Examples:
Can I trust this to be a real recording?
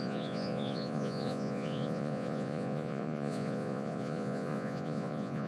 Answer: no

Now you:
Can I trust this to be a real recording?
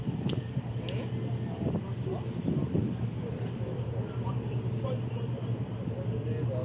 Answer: yes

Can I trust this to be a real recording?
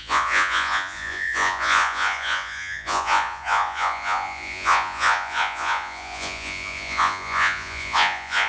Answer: no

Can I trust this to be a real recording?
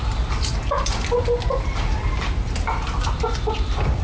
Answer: yes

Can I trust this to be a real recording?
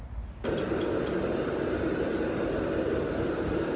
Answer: yes